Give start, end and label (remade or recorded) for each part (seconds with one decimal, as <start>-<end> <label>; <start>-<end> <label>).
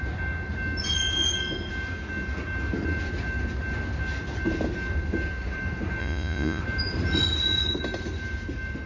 0.0-6.0 recorded; 6.0-6.6 remade; 6.6-8.9 recorded